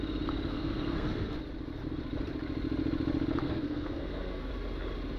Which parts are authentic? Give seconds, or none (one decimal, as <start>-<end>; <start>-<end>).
0.0-0.5; 1.4-3.4; 4.5-5.2